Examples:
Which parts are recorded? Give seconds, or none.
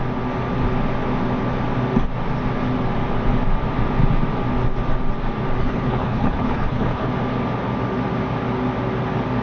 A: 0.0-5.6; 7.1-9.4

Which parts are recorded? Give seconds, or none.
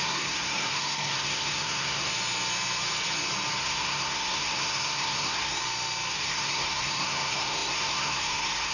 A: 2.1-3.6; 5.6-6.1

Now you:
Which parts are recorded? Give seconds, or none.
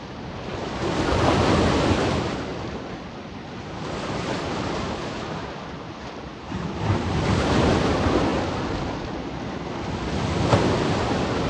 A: 0.0-2.5; 3.1-6.3; 7.7-11.5